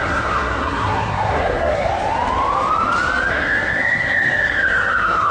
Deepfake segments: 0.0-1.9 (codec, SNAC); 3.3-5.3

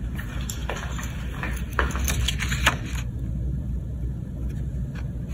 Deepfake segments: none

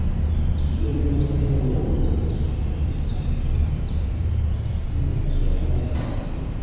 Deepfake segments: 0.9-4.7 (vocoder, BigVGAN v2)

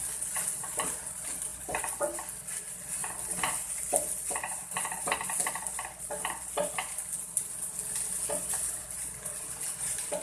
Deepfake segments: 1.5-2.6 (vocoder, BigVGAN v2); 3.0-7.4

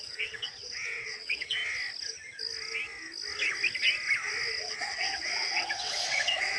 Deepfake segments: 0.0-1.6 (vocoder, WaveNeXt); 4.6-6.6